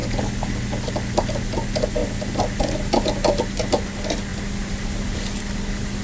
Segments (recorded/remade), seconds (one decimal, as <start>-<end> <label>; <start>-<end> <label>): 0.0-6.0 recorded